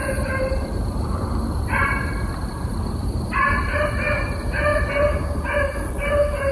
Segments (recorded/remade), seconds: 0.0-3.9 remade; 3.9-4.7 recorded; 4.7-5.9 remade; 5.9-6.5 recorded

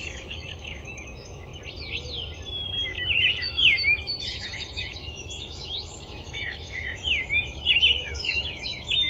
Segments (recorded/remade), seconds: 0.0-1.5 remade; 1.5-2.5 recorded; 2.5-9.1 remade

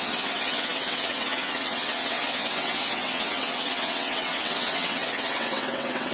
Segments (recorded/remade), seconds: 0.0-6.1 remade

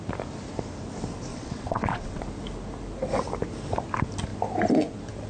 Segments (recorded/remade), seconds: 0.0-1.3 recorded; 1.3-2.2 remade; 2.2-5.3 recorded

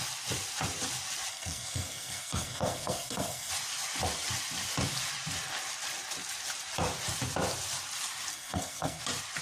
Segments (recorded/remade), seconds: 0.0-1.3 recorded; 1.3-3.5 remade; 3.5-8.3 recorded; 8.3-9.0 remade; 9.0-9.4 recorded

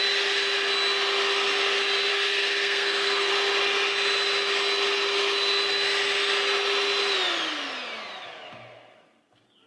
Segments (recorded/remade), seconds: 0.0-2.1 recorded; 2.1-3.3 remade; 3.3-9.7 recorded